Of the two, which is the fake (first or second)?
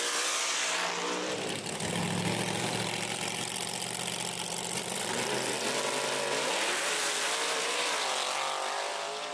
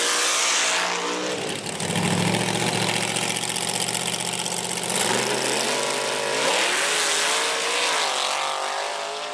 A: first